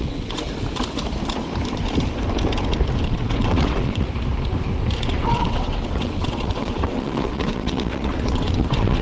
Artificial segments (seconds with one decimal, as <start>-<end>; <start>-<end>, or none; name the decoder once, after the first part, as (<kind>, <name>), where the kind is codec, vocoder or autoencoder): 0.0-0.4 (vocoder, WaveNeXt); 3.1-4.1; 5.0-9.0